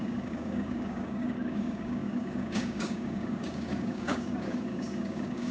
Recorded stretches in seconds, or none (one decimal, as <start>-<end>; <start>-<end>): none

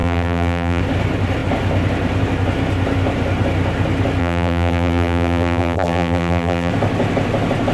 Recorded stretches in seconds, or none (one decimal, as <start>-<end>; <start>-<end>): 0.8-4.2; 6.7-7.7

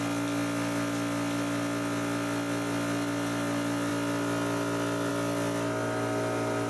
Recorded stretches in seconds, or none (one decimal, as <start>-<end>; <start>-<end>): 0.0-6.7

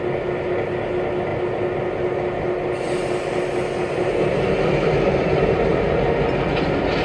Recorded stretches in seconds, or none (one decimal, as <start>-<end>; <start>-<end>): 0.0-7.0

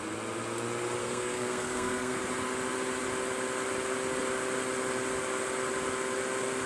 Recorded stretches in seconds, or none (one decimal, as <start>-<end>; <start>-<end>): 0.0-1.0; 2.2-6.7